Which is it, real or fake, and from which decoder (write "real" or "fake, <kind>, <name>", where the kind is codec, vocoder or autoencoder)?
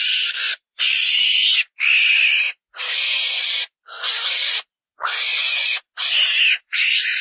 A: real